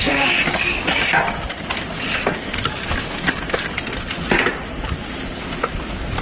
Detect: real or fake real